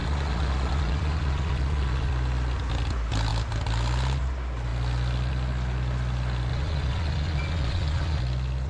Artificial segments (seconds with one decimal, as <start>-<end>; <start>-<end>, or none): 0.0-2.1; 6.5-8.2